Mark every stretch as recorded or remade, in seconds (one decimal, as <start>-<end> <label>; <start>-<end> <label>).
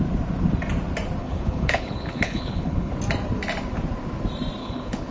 0.0-1.2 recorded; 1.2-2.9 remade; 2.9-4.6 recorded; 4.6-5.1 remade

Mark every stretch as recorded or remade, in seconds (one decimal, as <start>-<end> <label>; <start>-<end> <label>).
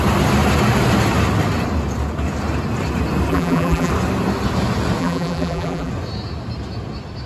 0.0-3.3 recorded; 3.3-3.9 remade; 3.9-5.0 recorded; 5.0-5.9 remade; 5.9-7.3 recorded